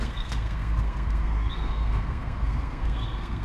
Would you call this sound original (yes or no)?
no